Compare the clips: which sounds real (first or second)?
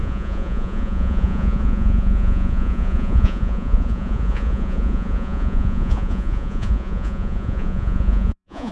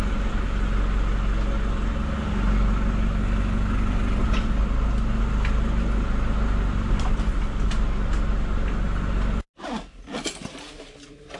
second